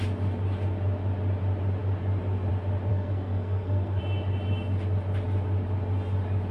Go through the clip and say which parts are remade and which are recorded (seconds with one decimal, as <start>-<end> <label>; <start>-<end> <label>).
0.0-2.9 recorded; 2.9-4.0 remade; 4.0-6.5 recorded